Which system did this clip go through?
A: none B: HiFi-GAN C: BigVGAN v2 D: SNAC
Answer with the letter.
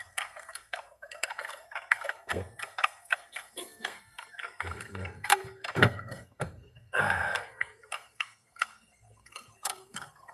D